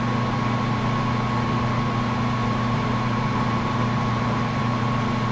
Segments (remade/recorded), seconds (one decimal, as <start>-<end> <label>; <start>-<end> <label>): 0.0-2.4 recorded; 2.4-4.6 remade; 4.6-5.3 recorded